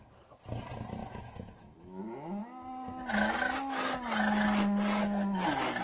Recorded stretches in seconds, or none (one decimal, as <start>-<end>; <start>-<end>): 0.0-1.0; 2.0-5.8